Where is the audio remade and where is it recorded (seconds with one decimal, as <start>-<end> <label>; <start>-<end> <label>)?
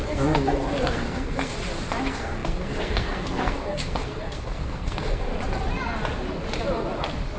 0.0-1.5 remade; 1.5-2.0 recorded; 2.0-5.3 remade; 5.3-7.4 recorded